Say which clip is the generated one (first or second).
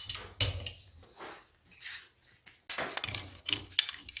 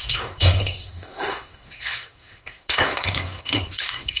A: second